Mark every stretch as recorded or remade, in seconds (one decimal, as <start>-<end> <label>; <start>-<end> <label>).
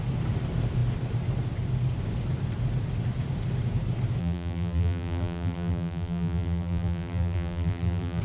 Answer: 0.0-4.2 recorded; 4.2-8.2 remade